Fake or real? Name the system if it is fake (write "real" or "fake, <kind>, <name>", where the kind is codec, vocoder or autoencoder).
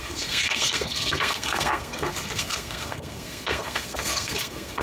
fake, codec, SNAC